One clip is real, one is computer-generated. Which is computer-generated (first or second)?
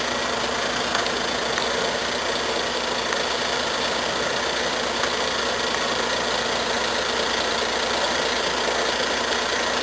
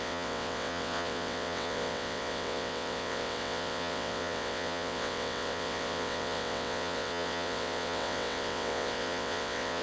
second